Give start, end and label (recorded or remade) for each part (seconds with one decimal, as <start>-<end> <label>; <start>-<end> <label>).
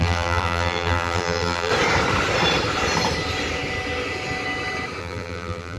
0.0-1.7 remade; 1.7-5.0 recorded; 5.0-5.8 remade